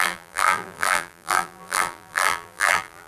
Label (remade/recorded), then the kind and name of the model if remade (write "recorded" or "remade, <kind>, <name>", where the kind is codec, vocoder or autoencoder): remade, vocoder, BigVGAN v2